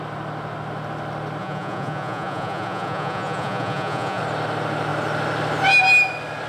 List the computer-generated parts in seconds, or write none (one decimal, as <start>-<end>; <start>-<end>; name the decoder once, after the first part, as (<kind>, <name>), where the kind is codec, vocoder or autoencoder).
1.4-4.2 (vocoder, Vocos)